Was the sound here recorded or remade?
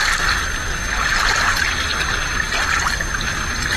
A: recorded